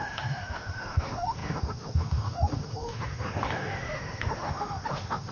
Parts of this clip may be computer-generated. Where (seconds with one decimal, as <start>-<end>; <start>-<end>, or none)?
0.0-5.3